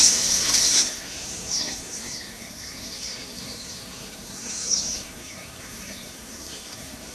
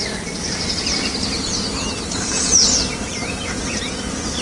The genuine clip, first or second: second